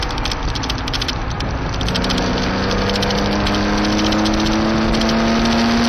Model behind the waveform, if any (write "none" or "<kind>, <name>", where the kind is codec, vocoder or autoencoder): none